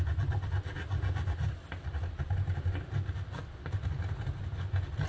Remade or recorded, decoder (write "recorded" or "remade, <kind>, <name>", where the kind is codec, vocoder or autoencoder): recorded